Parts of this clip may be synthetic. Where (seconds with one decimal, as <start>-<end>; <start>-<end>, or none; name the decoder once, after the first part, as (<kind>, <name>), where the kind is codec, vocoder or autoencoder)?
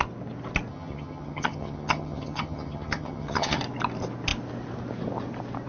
0.7-3.6 (vocoder, HiFi-GAN)